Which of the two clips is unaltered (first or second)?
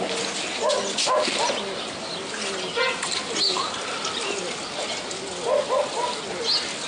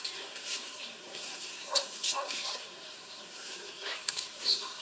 first